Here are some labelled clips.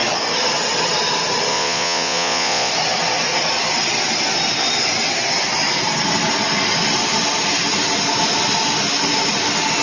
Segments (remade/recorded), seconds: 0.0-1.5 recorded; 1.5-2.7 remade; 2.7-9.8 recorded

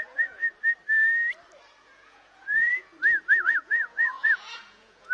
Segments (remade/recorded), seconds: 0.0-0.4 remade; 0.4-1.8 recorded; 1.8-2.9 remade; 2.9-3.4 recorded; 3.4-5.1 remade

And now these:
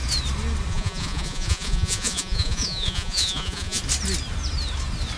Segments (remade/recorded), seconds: 0.0-0.7 recorded; 0.7-3.8 remade; 3.8-5.2 recorded

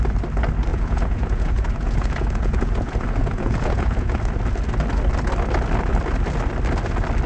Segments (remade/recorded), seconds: 0.0-0.7 recorded; 0.7-4.2 remade; 4.2-7.3 recorded

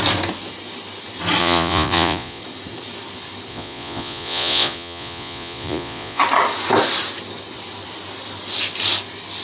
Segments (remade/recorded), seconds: 0.0-1.4 recorded; 1.4-2.4 remade; 2.4-3.5 recorded; 3.5-6.2 remade; 6.2-9.4 recorded

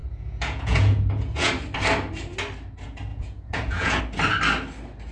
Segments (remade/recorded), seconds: 0.0-1.5 remade; 1.5-3.1 recorded; 3.1-4.0 remade; 4.0-5.1 recorded

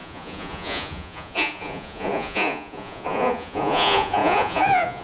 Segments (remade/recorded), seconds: 0.0-5.0 remade